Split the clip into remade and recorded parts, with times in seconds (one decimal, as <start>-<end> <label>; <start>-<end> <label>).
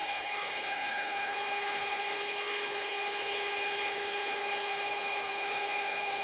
0.0-6.2 remade